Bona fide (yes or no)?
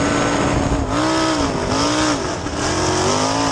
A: yes